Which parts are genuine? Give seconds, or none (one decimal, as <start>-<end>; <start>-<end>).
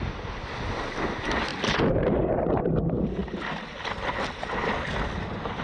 0.0-5.6